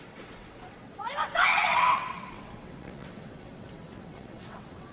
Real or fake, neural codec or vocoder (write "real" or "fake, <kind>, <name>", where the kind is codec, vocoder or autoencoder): fake, vocoder, WaveNeXt